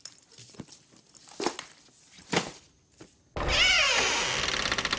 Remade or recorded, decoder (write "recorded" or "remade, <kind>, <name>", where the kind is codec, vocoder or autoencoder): recorded